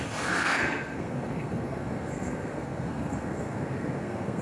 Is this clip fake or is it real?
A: fake